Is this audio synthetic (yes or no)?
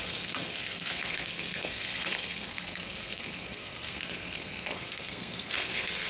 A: yes